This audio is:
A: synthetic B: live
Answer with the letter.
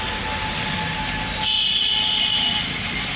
B